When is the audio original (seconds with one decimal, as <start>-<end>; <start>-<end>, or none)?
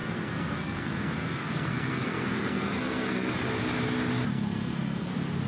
3.3-4.3; 5.1-5.5